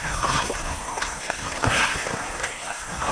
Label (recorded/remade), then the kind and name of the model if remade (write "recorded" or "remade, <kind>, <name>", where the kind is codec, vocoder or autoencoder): remade, codec, SNAC